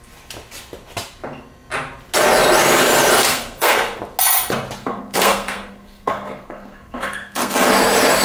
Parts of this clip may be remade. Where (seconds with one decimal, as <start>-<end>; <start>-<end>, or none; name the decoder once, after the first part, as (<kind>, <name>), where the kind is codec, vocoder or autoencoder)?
3.3-4.0 (codec, SNAC); 4.8-7.7